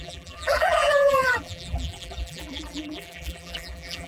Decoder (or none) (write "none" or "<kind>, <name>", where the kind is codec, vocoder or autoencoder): vocoder, BigVGAN v2